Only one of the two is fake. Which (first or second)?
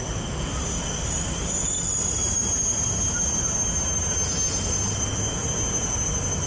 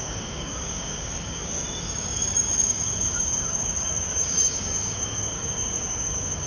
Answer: second